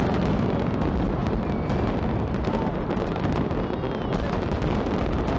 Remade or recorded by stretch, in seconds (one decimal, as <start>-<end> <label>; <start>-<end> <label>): 0.0-1.2 recorded; 1.2-2.2 remade; 2.2-5.4 recorded